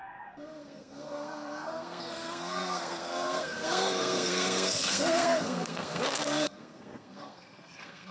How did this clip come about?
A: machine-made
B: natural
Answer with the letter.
A